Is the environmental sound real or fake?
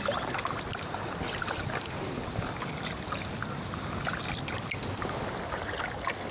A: real